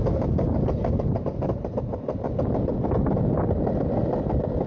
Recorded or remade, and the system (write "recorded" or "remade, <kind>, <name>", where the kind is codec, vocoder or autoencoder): recorded